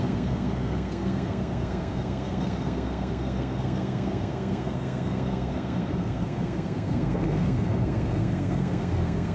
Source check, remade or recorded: remade